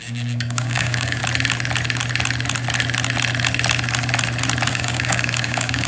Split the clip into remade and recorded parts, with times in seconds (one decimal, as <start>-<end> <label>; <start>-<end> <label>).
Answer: 0.0-1.2 remade; 1.2-4.7 recorded; 4.7-5.9 remade